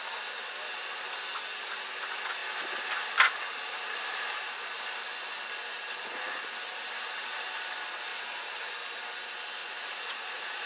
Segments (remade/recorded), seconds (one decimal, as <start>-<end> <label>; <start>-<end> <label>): 0.0-8.1 recorded; 8.1-8.7 remade; 8.7-9.6 recorded; 9.6-10.7 remade